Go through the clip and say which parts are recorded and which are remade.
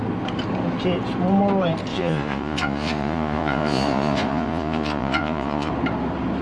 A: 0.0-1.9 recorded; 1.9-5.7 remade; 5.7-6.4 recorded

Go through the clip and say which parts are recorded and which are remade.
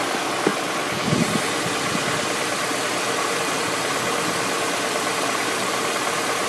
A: 0.0-6.5 recorded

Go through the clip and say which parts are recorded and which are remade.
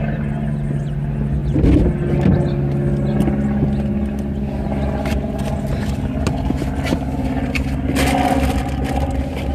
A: 0.0-9.5 recorded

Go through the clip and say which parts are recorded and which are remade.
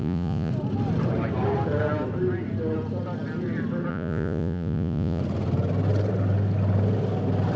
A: 0.0-0.5 remade; 0.5-3.9 recorded; 3.9-5.2 remade; 5.2-7.6 recorded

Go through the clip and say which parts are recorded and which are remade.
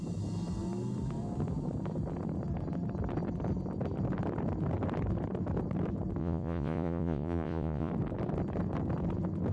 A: 0.0-6.2 recorded; 6.2-7.9 remade; 7.9-9.5 recorded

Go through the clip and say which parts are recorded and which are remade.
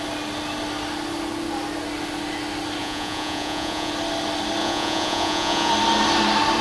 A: 0.0-2.8 recorded; 2.8-3.9 remade; 3.9-4.6 recorded; 4.6-5.7 remade; 5.7-6.6 recorded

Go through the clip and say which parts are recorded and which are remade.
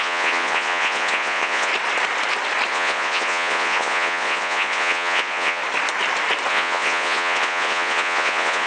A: 0.0-1.7 remade; 1.7-2.7 recorded; 2.7-5.6 remade; 5.6-6.5 recorded; 6.5-8.7 remade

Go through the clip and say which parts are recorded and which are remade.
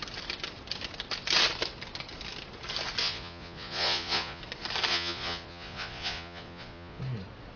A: 0.0-3.0 recorded; 3.0-4.4 remade; 4.4-4.9 recorded; 4.9-7.0 remade; 7.0-7.6 recorded